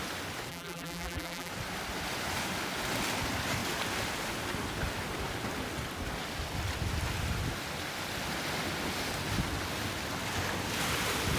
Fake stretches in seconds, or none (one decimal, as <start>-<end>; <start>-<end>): 0.5-1.5